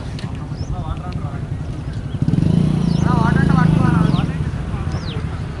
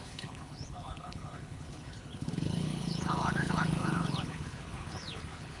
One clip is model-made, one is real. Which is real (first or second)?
first